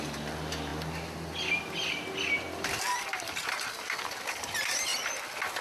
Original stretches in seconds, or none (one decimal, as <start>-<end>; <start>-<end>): 0.0-5.6

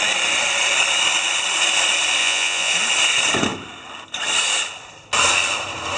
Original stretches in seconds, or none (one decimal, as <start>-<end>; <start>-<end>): 0.0-2.2; 2.7-6.0

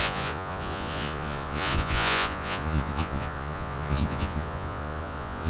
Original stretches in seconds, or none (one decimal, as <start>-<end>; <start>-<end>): none